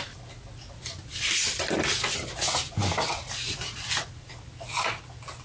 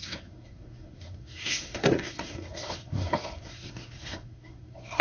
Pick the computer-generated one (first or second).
second